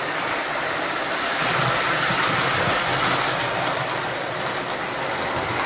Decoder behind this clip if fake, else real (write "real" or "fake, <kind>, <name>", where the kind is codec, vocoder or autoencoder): real